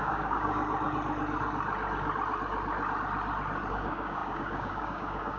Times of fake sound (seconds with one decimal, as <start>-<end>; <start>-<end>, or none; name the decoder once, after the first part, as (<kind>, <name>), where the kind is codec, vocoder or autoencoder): 0.0-0.6 (codec, DAC); 3.7-5.4